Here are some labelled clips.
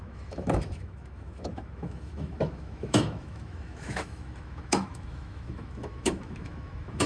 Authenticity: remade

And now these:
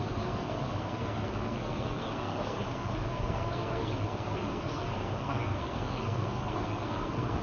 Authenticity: remade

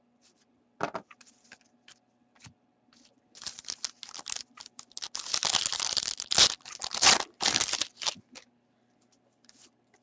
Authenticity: recorded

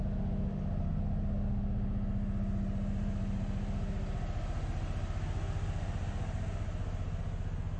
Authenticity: recorded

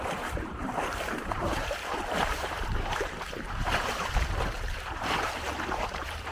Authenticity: remade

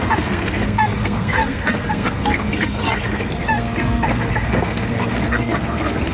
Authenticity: remade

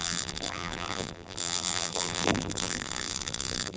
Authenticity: remade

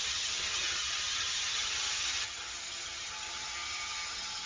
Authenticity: remade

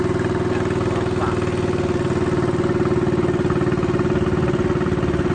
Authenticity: recorded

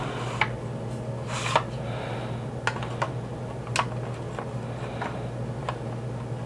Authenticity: recorded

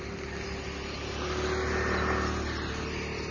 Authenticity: recorded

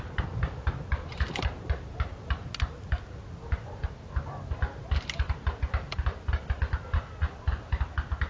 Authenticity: recorded